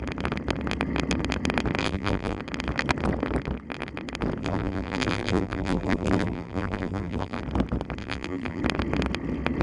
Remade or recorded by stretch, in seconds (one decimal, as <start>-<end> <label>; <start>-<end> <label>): 0.0-1.8 recorded; 1.8-2.4 remade; 2.4-4.4 recorded; 4.4-7.4 remade; 7.4-8.0 recorded; 8.0-8.6 remade; 8.6-9.6 recorded